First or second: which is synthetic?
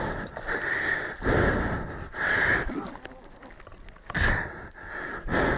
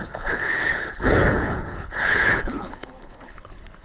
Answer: second